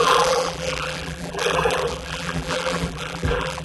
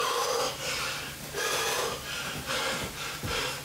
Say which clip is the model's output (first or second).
first